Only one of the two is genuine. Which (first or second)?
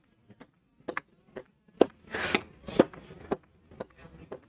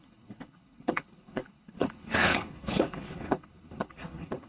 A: first